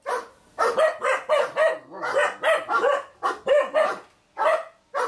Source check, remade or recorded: recorded